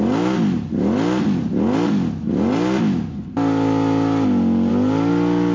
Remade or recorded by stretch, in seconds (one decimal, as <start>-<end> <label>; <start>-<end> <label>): 0.0-5.5 recorded